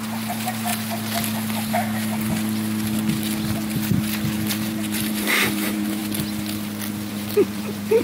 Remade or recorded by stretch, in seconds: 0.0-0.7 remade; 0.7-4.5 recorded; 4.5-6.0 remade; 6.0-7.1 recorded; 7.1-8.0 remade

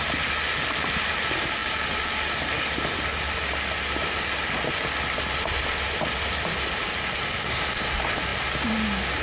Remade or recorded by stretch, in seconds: 0.0-9.2 recorded

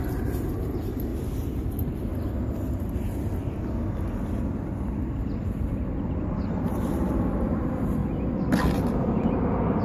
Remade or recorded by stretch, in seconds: 0.0-1.1 remade; 1.1-6.3 recorded; 6.3-8.0 remade; 8.0-8.7 recorded; 8.7-9.8 remade